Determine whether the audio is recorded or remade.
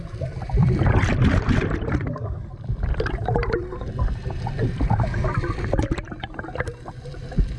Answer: remade